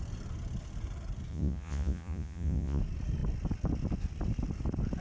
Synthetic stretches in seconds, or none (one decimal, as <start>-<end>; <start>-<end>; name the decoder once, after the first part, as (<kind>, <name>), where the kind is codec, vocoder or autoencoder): 1.3-2.8 (vocoder, Vocos)